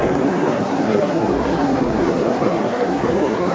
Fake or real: fake